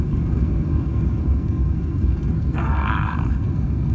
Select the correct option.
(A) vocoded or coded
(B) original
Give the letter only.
A